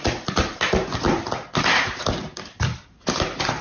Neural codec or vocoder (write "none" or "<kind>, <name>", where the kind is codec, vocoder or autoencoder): none